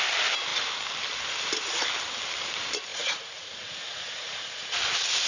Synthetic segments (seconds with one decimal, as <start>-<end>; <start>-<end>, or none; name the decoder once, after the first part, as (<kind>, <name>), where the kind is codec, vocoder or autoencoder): 2.9-4.8 (vocoder, Vocos)